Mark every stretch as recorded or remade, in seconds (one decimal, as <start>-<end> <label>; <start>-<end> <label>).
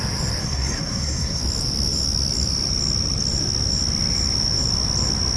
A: 0.0-0.4 recorded; 0.4-1.4 remade; 1.4-5.4 recorded